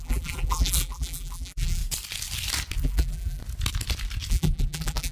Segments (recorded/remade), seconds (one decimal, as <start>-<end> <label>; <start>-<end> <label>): 0.0-1.8 remade; 1.8-2.8 recorded; 2.8-3.4 remade; 3.4-4.3 recorded; 4.3-5.1 remade